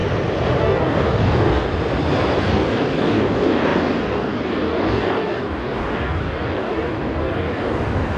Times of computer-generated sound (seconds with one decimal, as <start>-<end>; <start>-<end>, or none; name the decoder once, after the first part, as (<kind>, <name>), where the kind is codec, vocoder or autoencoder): 0.6-1.7 (codec, DAC); 2.4-8.2